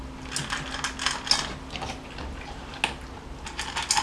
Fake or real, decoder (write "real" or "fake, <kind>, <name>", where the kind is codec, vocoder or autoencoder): real